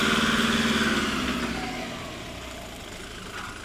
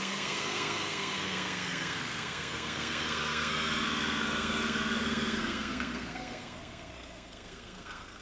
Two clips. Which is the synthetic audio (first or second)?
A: second